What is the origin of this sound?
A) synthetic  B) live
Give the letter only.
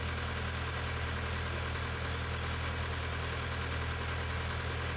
B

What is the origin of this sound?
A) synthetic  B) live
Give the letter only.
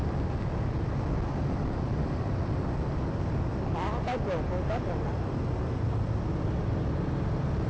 B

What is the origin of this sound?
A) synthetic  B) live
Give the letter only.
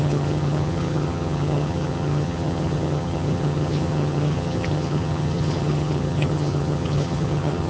A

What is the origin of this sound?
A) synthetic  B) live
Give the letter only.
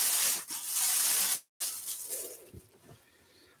B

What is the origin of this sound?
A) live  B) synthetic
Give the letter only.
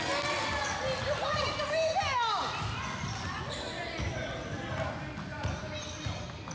A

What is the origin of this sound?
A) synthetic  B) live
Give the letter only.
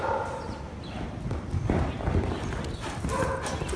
A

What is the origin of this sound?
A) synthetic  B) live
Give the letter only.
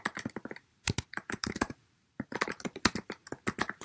A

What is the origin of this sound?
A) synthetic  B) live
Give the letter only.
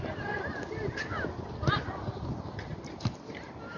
B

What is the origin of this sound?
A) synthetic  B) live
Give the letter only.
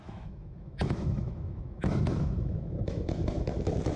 A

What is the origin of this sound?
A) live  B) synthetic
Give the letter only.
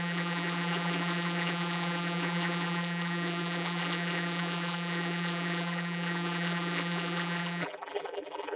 B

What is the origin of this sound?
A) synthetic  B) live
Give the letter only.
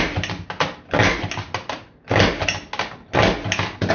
B